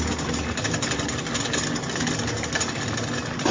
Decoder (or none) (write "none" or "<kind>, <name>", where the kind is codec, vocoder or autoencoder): none